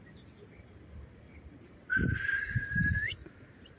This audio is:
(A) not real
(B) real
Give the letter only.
A